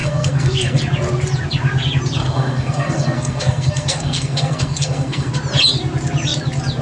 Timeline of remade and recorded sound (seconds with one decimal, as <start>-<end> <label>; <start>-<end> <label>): 0.0-0.8 remade; 0.8-2.2 recorded; 2.2-5.3 remade; 5.3-6.8 recorded